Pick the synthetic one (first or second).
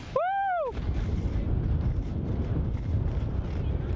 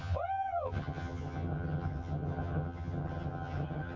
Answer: second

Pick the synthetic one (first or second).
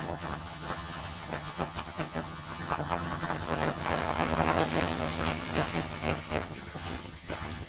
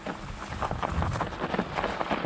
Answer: first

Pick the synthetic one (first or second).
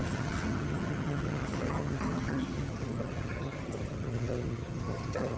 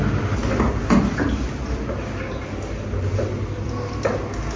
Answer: first